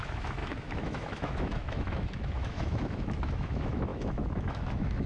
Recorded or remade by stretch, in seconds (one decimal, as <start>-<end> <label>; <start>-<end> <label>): 0.0-5.1 remade